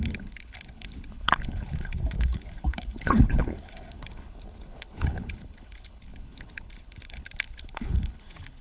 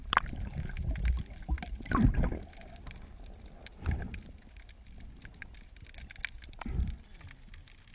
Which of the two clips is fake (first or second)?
first